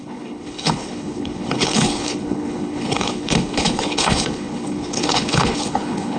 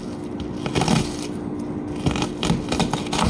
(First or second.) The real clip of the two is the second